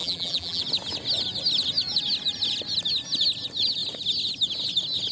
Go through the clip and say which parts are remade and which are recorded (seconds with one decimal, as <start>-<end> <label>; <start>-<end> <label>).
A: 0.0-0.6 remade; 0.6-5.1 recorded